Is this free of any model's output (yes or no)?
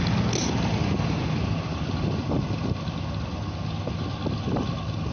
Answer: yes